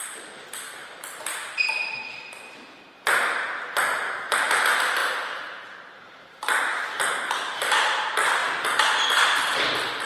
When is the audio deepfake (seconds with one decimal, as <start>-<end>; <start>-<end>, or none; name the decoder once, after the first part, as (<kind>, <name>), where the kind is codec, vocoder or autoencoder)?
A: 5.0-6.0 (vocoder, BigVGAN v2)